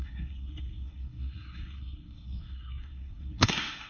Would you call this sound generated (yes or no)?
yes